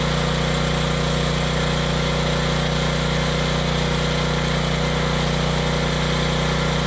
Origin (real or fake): real